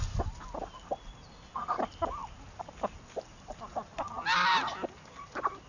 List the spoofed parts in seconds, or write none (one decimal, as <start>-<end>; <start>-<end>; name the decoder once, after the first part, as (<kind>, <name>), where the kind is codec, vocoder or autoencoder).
none